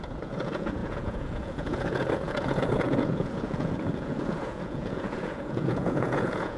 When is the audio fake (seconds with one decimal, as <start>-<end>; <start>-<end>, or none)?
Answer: 0.0-6.6